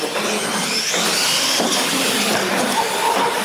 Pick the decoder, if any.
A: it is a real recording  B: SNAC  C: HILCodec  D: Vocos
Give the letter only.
A